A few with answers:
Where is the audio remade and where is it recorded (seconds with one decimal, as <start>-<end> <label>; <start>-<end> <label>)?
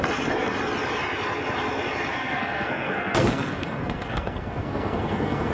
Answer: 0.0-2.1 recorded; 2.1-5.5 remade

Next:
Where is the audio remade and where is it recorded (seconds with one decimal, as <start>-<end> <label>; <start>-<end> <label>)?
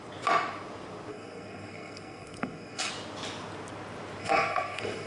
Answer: 0.0-1.1 recorded; 1.1-2.9 remade; 2.9-4.2 recorded; 4.2-5.1 remade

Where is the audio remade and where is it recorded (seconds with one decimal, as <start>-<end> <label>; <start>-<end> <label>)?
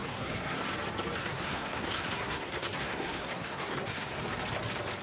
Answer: 0.0-0.6 remade; 0.6-1.2 recorded; 1.2-4.2 remade; 4.2-5.0 recorded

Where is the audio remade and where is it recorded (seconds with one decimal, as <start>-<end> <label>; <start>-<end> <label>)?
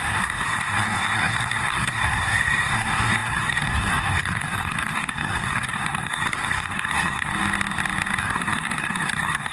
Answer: 0.0-7.3 remade; 7.3-8.2 recorded; 8.2-9.5 remade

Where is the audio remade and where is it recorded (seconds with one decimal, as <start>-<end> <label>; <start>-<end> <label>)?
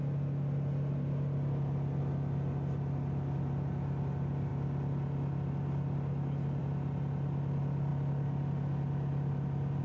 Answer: 0.0-9.8 recorded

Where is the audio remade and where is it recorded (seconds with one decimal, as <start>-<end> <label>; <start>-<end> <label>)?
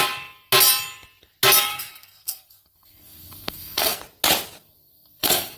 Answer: 0.0-1.7 recorded; 1.7-4.0 remade; 4.0-4.6 recorded; 4.6-5.6 remade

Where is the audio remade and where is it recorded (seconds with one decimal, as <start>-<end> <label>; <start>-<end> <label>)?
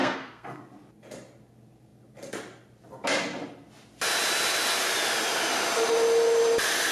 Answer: 0.0-0.6 remade; 0.6-6.9 recorded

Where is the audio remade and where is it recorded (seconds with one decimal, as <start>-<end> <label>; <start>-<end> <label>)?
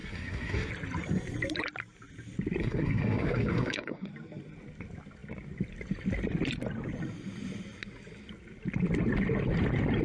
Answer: 0.0-0.7 remade; 0.7-2.6 recorded; 2.6-4.1 remade; 4.1-10.0 recorded